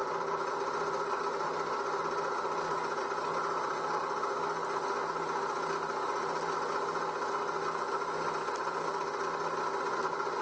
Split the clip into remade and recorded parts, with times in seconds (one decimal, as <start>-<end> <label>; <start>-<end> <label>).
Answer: 0.0-2.0 remade; 2.0-10.4 recorded